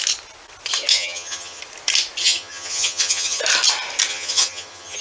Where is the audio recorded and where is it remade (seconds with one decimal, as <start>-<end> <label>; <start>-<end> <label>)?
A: 0.0-0.9 recorded; 0.9-1.6 remade; 1.6-2.2 recorded; 2.2-3.4 remade; 3.4-4.1 recorded; 4.1-5.0 remade